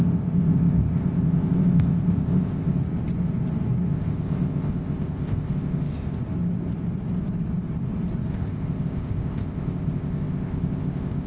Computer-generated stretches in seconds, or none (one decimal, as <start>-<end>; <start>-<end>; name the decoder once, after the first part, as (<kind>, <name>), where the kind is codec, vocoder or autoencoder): 0.0-2.8 (codec, ZipCodec); 3.9-6.2; 8.3-11.3